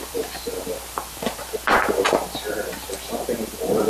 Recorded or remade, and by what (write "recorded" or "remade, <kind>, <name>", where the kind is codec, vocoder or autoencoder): remade, vocoder, BigVGAN v2